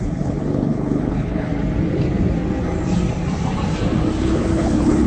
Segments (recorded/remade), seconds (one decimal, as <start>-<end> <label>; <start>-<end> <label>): 0.0-1.5 remade; 1.5-4.2 recorded; 4.2-5.1 remade